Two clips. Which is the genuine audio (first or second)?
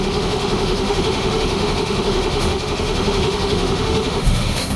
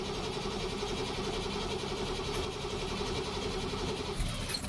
second